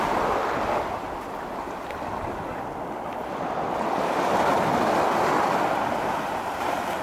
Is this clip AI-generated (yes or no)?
no